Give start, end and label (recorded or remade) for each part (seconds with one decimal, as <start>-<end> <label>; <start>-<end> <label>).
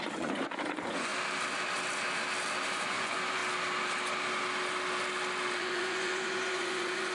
0.0-1.1 remade; 1.1-2.6 recorded; 2.6-3.4 remade; 3.4-5.6 recorded; 5.6-7.1 remade